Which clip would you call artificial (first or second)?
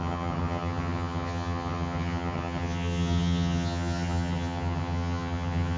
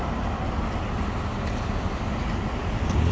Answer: first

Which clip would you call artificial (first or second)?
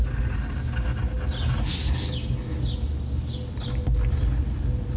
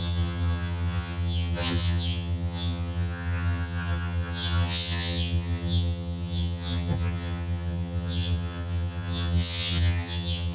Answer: second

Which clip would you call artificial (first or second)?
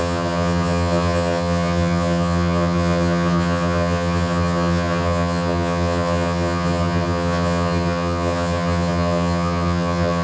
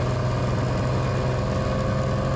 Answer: first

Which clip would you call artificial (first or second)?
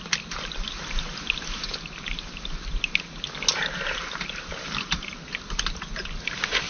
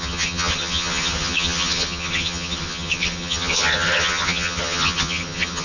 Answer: second